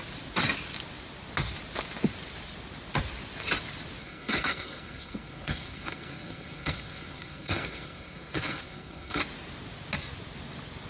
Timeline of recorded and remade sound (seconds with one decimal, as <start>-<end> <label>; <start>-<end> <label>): 0.0-4.0 recorded; 4.0-9.2 remade; 9.2-10.9 recorded